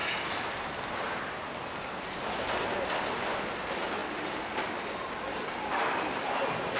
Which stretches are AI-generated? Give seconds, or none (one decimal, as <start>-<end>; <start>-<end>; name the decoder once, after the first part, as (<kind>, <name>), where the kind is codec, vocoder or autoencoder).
0.0-0.6 (vocoder, BigVGAN v2); 4.0-6.8